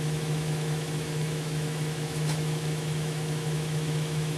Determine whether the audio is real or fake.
fake